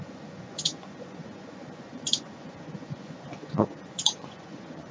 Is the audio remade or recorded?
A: remade